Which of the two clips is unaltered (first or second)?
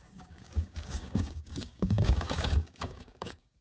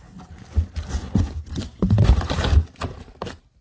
second